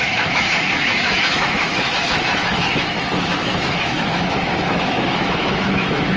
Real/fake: fake